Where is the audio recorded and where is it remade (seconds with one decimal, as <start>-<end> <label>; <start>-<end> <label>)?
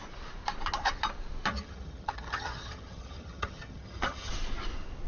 0.0-1.5 recorded; 1.5-4.3 remade; 4.3-5.1 recorded